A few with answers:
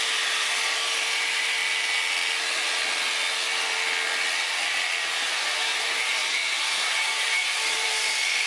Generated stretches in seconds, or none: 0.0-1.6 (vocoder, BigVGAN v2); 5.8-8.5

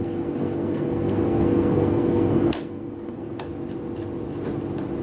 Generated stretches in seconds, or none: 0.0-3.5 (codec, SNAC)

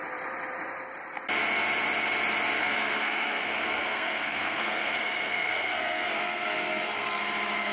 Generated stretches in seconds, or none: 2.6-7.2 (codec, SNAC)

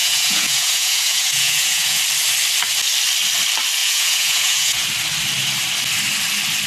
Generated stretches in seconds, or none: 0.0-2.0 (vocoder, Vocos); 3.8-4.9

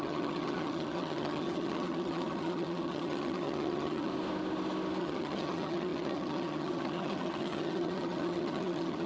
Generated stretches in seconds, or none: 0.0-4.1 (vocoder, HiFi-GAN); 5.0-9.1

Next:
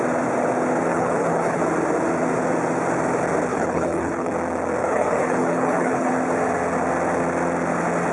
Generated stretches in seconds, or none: 0.9-1.6 (codec, HILCodec); 3.5-4.3; 4.8-6.1

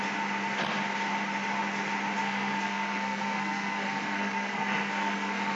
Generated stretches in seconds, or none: 2.2-5.6 (codec, SNAC)

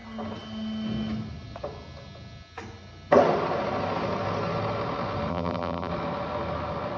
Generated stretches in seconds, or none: 5.3-5.9 (vocoder, BigVGAN v2)